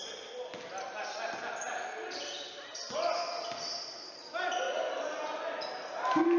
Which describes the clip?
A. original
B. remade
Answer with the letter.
A